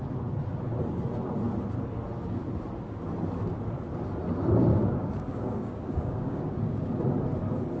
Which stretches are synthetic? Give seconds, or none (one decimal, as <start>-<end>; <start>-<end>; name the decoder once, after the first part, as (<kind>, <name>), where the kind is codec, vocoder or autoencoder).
4.7-6.9 (codec, DAC)